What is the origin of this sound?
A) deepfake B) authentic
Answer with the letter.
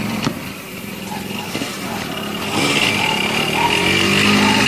B